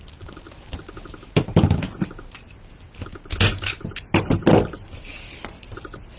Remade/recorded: recorded